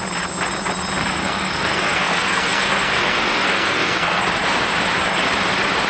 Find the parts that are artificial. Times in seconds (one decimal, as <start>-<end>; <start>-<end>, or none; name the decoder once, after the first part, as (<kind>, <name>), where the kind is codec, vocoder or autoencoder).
1.0-4.2 (codec, SNAC)